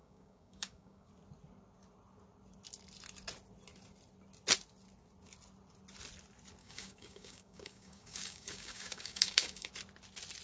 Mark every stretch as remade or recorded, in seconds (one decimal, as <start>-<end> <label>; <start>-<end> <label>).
0.0-1.1 remade; 1.1-6.6 recorded; 6.6-9.7 remade; 9.7-10.4 recorded